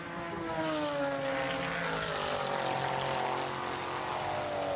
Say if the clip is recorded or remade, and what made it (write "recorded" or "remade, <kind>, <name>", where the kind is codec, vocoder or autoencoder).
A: recorded